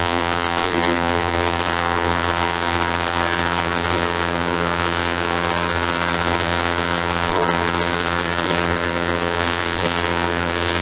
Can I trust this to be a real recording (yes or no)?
no